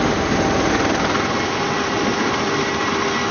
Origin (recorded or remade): recorded